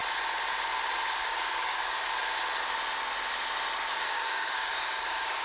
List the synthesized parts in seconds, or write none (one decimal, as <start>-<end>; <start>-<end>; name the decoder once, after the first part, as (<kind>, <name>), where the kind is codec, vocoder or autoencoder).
1.2-2.1 (codec, DAC); 3.9-5.4